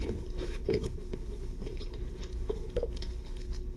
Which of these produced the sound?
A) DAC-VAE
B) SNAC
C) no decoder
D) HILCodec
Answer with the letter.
D